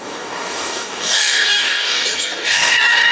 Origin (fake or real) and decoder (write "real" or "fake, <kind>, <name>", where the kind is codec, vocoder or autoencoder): fake, codec, DAC